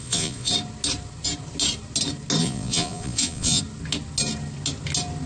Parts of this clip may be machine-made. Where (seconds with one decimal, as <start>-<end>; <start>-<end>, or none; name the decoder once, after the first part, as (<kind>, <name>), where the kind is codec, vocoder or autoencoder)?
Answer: 0.0-0.5 (vocoder, Vocos); 2.4-3.6